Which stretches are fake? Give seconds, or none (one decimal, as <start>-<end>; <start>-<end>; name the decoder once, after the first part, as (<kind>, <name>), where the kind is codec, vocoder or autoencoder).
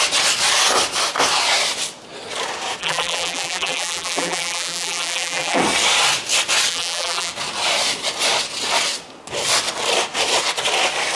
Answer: 2.8-5.6 (vocoder, BigVGAN v2); 6.7-7.3